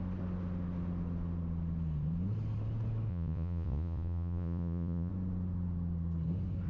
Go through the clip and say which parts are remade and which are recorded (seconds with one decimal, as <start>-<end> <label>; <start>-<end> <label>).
0.0-3.1 recorded; 3.1-5.1 remade; 5.1-6.7 recorded